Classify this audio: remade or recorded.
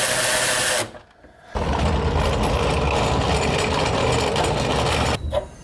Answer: recorded